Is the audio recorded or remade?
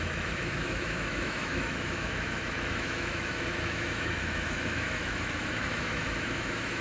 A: remade